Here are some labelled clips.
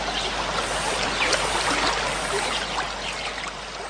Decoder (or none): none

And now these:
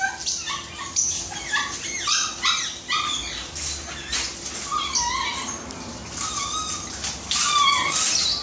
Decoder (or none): none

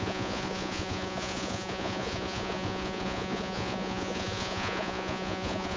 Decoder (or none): vocoder, Vocos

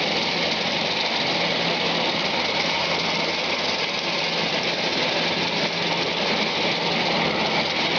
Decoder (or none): none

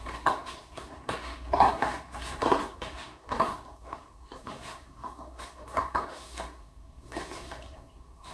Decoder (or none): codec, SNAC